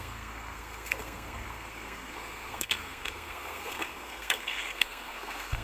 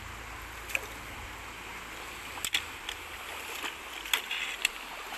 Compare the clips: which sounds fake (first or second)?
first